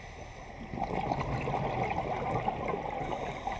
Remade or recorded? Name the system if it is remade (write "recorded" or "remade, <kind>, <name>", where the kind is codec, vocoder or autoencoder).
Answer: recorded